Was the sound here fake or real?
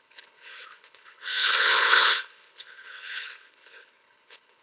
fake